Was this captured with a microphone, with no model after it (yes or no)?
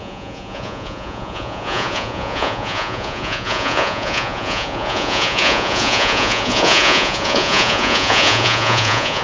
no